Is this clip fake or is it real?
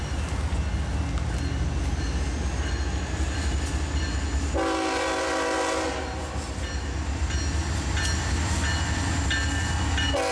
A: real